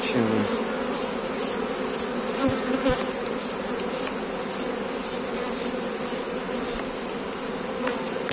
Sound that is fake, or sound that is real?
real